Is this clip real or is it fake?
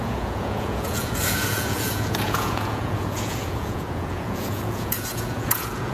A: fake